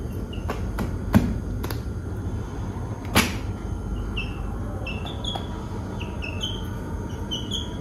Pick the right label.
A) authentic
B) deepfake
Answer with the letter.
A